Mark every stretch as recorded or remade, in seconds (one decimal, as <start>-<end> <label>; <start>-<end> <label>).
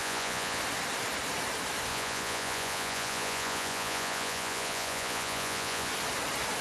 0.0-0.6 remade; 0.6-1.9 recorded; 1.9-5.9 remade; 5.9-6.6 recorded